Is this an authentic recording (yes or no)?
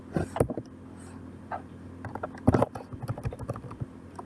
yes